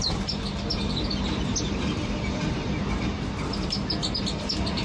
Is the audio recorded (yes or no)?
yes